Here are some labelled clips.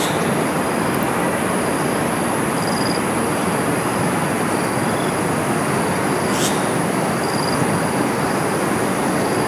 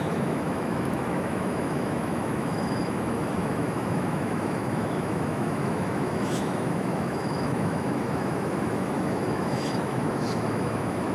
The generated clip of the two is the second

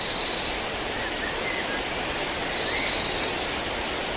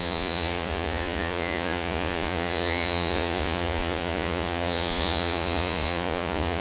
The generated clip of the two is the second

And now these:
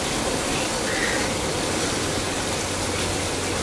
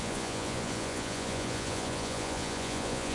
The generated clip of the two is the second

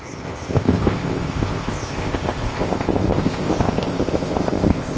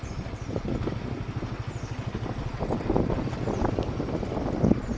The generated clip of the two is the first